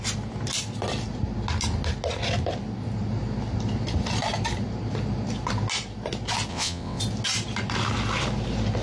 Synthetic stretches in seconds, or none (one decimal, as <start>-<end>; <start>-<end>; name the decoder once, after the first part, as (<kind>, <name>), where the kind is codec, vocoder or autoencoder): 6.5-7.0 (vocoder, WaveNeXt)